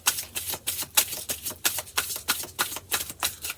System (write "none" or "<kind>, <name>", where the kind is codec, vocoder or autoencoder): none